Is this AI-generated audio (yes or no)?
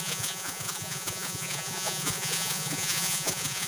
yes